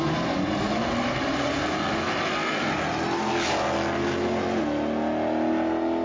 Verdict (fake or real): real